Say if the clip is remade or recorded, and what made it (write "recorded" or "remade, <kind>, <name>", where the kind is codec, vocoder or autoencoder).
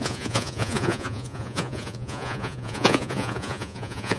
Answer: remade, vocoder, Vocos